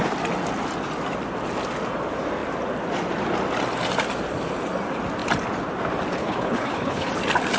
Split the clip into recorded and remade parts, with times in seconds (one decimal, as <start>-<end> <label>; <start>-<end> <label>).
0.0-6.2 recorded; 6.2-7.1 remade; 7.1-7.6 recorded

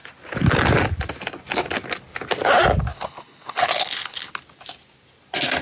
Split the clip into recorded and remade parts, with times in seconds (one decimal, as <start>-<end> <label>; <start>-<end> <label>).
0.0-2.9 recorded; 2.9-4.3 remade; 4.3-5.6 recorded